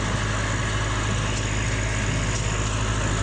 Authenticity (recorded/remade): recorded